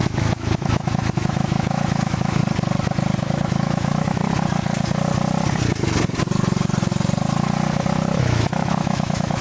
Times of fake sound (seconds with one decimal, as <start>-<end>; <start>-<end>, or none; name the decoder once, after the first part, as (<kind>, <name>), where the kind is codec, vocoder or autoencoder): 0.0-2.4 (autoencoder, DAC-VAE); 3.2-4.2; 8.2-9.4

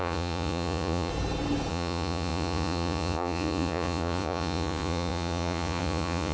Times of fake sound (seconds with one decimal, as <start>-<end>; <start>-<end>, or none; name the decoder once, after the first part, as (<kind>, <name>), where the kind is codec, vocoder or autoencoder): 0.0-1.1 (vocoder, Vocos); 1.7-6.3

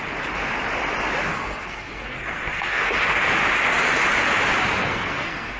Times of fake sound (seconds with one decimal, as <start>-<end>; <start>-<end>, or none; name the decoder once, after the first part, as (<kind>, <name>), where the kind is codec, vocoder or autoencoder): 1.3-3.1 (codec, SNAC); 4.8-5.6

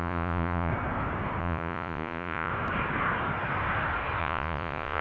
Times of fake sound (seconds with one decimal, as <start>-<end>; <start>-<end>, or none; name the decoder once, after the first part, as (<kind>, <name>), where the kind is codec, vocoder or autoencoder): 0.0-0.7 (vocoder, Vocos); 1.4-2.5; 4.2-5.0

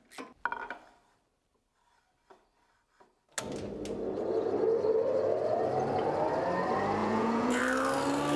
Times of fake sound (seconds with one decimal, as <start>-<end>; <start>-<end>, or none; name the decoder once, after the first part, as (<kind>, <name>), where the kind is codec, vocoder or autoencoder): 7.0-7.6 (vocoder, Vocos)

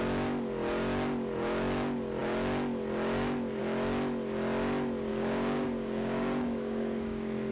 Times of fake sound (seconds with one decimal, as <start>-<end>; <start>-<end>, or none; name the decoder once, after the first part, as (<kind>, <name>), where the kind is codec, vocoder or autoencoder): 5.1-7.5 (codec, DAC)

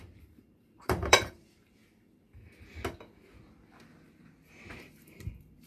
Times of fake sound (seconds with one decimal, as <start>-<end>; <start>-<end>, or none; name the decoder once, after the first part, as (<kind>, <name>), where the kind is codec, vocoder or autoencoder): 0.0-1.8 (vocoder, BigVGAN v2); 4.8-5.7